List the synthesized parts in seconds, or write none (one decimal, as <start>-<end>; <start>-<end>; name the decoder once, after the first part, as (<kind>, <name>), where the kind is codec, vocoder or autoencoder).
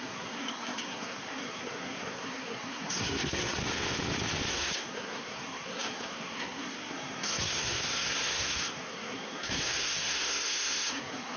0.0-3.6 (codec, SNAC); 4.5-11.4